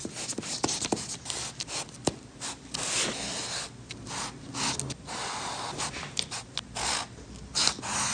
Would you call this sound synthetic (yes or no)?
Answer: no